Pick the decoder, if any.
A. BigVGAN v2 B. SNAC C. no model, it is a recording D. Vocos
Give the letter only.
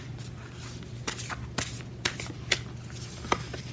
C